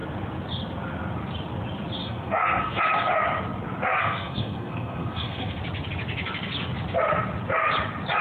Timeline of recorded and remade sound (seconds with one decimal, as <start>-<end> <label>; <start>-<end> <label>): 0.0-2.0 recorded; 2.0-2.8 remade; 2.8-4.0 recorded; 4.0-5.6 remade; 5.6-8.2 recorded